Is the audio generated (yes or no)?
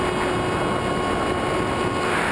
no